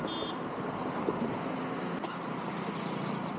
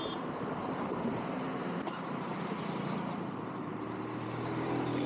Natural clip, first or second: first